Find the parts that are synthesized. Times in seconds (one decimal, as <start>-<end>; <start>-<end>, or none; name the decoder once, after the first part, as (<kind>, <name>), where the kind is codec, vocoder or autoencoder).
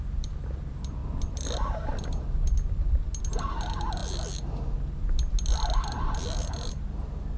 none